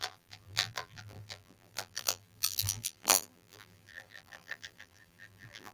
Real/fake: fake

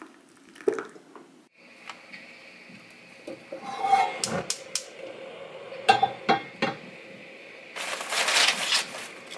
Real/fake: real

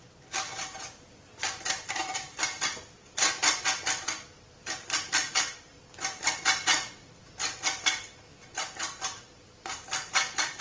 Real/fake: fake